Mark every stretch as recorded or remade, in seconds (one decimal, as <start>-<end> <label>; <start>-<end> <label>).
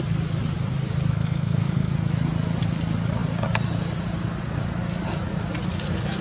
0.0-1.1 recorded; 1.1-1.9 remade; 1.9-6.2 recorded